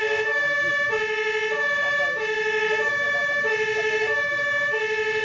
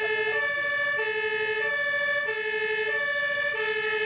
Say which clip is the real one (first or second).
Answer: second